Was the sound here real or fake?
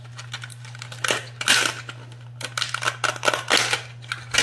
real